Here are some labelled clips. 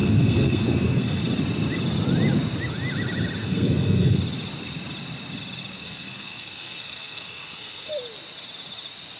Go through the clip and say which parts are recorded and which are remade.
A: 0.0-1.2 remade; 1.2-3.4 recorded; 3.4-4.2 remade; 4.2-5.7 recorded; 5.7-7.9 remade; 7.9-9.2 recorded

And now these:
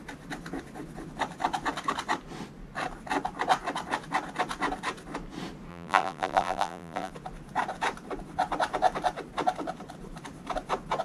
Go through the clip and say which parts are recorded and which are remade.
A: 0.0-5.7 recorded; 5.7-7.1 remade; 7.1-11.0 recorded

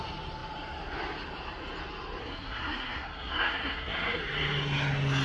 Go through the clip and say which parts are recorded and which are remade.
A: 0.0-2.2 recorded; 2.2-4.2 remade; 4.2-5.2 recorded

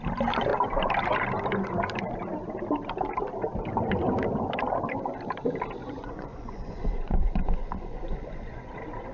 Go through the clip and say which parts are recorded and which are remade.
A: 0.0-5.8 recorded; 5.8-8.7 remade; 8.7-9.1 recorded

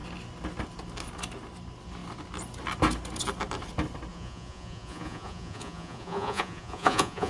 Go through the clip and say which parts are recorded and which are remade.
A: 0.0-4.1 recorded; 4.1-7.3 remade